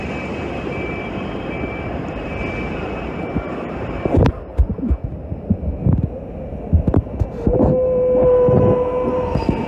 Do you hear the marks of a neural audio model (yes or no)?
no